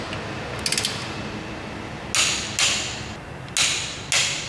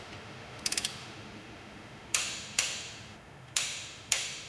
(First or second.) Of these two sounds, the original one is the first